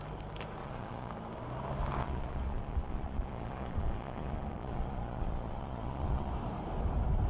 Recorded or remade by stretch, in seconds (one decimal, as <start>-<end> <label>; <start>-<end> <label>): 0.0-0.6 recorded; 0.6-1.1 remade; 1.1-2.0 recorded; 2.0-6.3 remade; 6.3-7.3 recorded